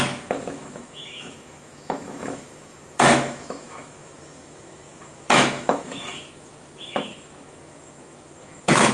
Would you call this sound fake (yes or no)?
yes